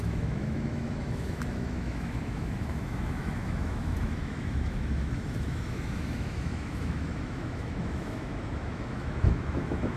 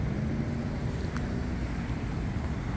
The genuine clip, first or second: second